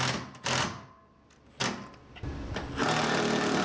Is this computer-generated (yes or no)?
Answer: no